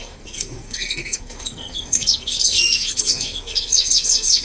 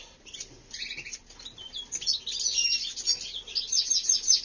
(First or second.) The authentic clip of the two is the second